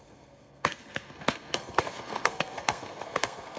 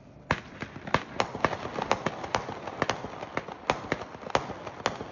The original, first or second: second